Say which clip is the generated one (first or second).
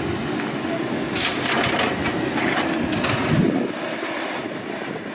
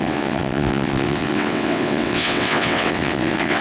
second